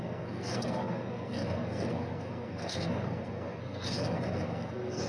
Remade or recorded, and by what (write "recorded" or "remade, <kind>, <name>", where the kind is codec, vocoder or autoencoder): remade, codec, SNAC